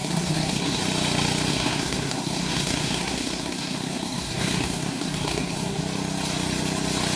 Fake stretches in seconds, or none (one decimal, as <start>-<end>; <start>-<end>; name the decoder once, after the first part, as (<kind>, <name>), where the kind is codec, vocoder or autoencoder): 0.0-0.8 (codec, SNAC); 1.5-5.8